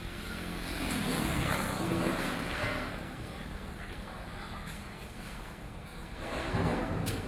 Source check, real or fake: fake